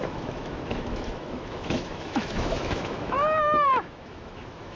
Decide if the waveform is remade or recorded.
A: remade